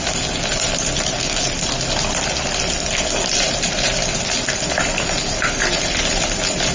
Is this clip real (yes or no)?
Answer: yes